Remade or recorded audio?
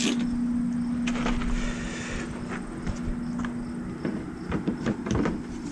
recorded